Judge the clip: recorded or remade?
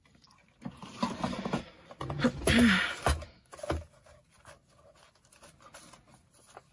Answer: recorded